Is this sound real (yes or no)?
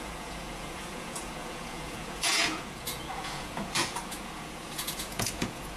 no